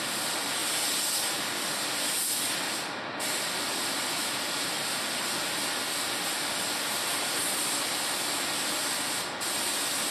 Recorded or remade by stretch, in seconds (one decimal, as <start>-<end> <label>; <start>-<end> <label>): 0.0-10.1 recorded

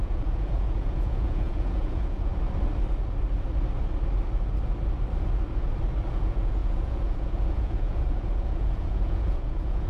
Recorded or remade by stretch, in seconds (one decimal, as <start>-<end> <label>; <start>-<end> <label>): 0.0-2.3 remade; 2.3-6.1 recorded; 6.1-9.9 remade

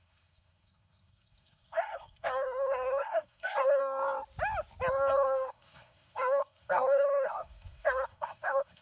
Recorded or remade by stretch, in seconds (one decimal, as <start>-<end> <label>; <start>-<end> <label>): 0.0-3.8 remade; 3.8-5.1 recorded; 5.1-8.8 remade

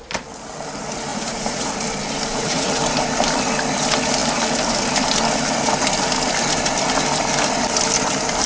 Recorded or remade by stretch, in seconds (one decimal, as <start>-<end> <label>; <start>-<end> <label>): 0.0-1.1 recorded; 1.1-1.7 remade; 1.7-2.3 recorded; 2.3-2.8 remade; 2.8-8.5 recorded

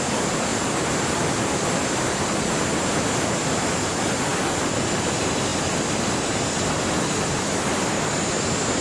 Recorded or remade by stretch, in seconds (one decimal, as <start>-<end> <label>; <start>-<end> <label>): 0.0-4.3 recorded; 4.3-5.1 remade; 5.1-8.8 recorded

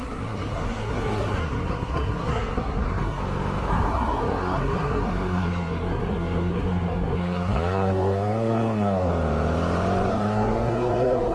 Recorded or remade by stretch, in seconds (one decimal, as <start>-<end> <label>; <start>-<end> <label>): 0.0-3.2 remade; 3.2-3.7 recorded; 3.7-9.1 remade; 9.1-10.1 recorded; 10.1-11.3 remade